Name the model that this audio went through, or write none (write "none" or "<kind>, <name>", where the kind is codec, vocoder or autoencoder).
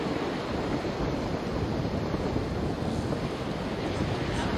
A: none